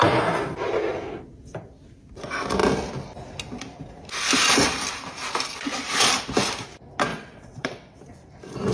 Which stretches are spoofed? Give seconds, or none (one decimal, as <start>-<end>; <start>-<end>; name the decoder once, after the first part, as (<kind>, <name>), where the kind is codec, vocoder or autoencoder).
7.1-8.0 (vocoder, WaveNeXt)